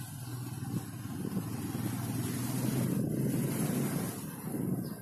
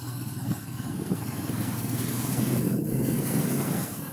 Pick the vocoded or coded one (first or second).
second